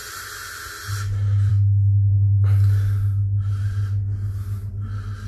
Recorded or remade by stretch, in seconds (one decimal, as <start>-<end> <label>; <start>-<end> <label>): 0.0-5.3 recorded